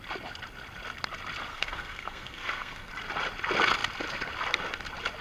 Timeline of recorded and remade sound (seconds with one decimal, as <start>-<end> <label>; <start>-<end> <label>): 0.0-1.5 recorded; 1.5-2.9 remade; 2.9-5.2 recorded